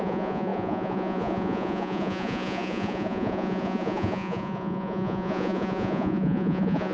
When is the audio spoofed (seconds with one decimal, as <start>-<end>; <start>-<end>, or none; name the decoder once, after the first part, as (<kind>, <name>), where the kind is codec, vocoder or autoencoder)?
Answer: 0.0-6.9 (vocoder, Vocos)